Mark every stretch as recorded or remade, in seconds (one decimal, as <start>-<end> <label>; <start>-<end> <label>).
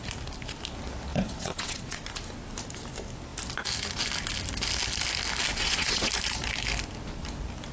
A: 0.0-1.1 recorded; 1.1-2.0 remade; 2.0-5.5 recorded; 5.5-6.1 remade; 6.1-7.7 recorded